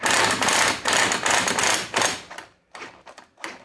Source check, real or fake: real